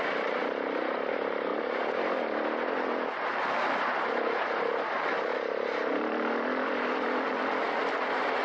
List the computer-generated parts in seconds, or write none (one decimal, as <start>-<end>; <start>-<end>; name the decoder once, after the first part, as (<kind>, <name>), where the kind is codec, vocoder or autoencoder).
0.0-1.5 (vocoder, BigVGAN v2); 3.7-5.3; 5.9-7.3